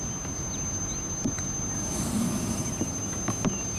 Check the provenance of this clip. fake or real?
real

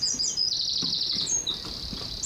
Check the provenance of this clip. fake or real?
real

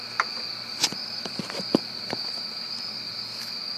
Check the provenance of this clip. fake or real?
fake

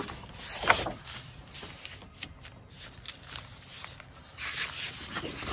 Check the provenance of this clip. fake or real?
real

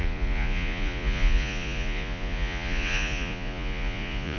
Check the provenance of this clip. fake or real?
fake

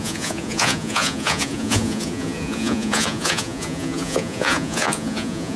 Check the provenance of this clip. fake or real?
fake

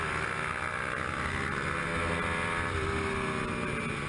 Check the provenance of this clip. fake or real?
real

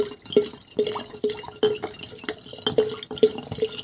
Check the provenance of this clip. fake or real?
real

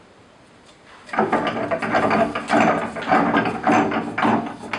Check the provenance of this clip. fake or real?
real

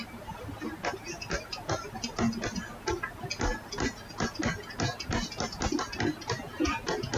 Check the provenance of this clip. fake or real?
real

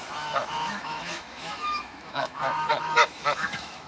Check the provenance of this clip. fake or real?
fake